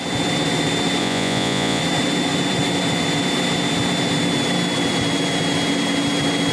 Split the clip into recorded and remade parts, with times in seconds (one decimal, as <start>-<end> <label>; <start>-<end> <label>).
0.0-1.0 recorded; 1.0-1.8 remade; 1.8-6.5 recorded